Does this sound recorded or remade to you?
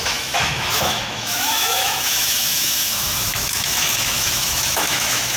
remade